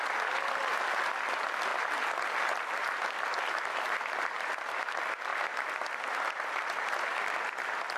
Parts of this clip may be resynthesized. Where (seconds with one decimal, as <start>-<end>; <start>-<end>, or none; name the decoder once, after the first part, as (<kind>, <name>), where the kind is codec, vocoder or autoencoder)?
none